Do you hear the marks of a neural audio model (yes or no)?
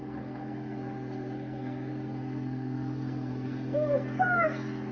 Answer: yes